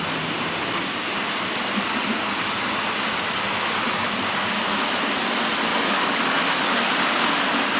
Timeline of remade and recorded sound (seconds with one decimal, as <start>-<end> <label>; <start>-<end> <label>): 0.0-5.7 recorded; 5.7-6.9 remade; 6.9-7.8 recorded